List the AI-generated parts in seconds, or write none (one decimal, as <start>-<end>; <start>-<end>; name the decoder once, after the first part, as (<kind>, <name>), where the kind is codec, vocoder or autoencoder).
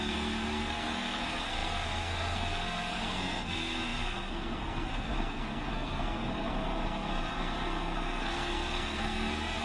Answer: 0.0-9.6 (codec, SNAC)